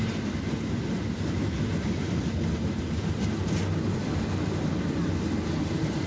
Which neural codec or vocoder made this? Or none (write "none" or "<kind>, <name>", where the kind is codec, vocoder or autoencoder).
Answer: none